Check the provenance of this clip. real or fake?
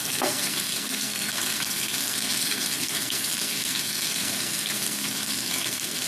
fake